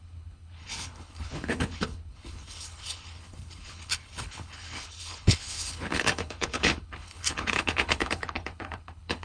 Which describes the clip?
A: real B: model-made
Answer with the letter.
B